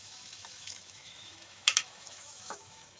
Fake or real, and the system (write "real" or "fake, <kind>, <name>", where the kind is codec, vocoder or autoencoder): fake, autoencoder, DAC-VAE